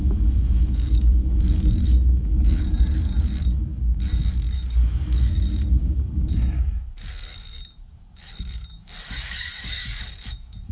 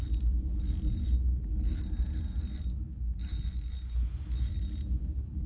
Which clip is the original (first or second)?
second